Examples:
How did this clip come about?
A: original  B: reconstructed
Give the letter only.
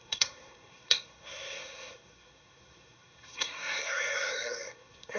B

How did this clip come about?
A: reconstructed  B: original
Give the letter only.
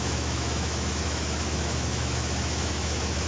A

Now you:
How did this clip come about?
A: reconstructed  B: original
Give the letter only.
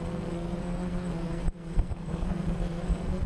A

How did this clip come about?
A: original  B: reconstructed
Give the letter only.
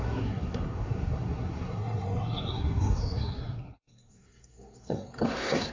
B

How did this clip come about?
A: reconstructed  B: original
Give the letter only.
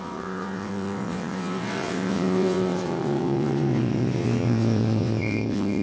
A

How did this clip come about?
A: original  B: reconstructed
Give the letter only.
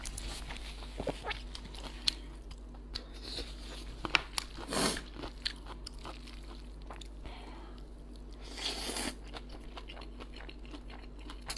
A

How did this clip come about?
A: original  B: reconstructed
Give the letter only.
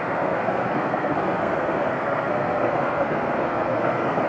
B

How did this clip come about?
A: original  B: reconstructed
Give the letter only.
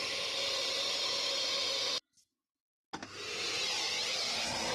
A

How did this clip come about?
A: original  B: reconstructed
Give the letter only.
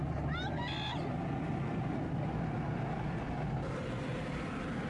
A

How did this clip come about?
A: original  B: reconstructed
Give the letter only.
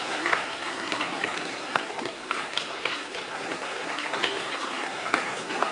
B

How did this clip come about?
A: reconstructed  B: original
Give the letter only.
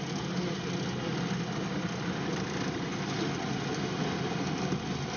B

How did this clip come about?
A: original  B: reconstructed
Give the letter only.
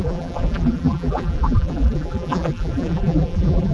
B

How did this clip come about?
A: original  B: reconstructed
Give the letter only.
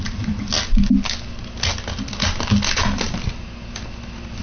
A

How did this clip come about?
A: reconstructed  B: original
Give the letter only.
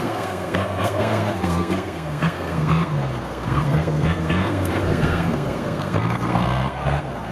A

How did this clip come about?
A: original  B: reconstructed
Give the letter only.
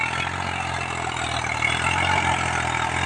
A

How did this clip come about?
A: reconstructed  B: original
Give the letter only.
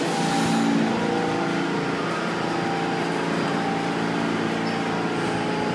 B